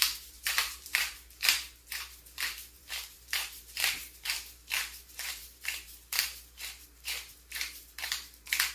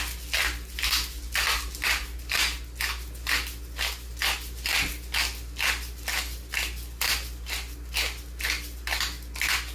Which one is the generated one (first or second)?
first